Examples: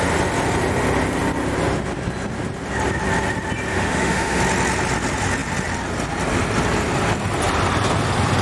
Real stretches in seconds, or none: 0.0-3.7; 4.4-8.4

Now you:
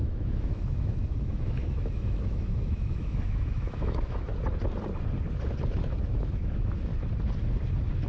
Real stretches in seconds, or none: 4.3-5.8; 6.9-8.1